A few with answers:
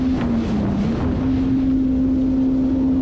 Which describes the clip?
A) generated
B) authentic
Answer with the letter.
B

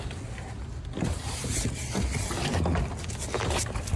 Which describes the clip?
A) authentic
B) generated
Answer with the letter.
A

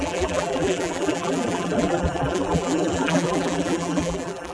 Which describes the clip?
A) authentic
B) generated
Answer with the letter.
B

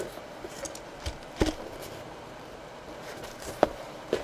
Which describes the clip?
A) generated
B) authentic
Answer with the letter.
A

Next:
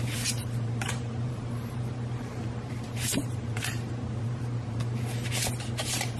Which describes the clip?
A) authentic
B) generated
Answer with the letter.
B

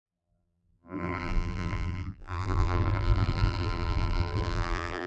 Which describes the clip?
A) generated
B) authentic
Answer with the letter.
A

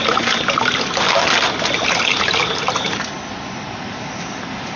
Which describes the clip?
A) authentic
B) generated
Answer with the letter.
A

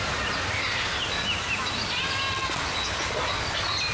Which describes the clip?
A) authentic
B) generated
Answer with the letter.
A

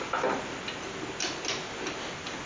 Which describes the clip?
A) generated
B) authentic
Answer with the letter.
B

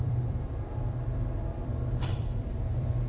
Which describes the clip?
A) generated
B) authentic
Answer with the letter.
A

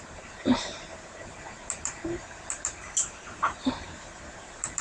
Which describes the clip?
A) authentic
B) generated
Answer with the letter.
B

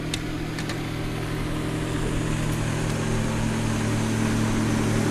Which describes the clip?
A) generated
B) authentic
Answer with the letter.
B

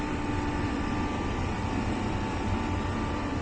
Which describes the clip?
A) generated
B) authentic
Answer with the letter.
A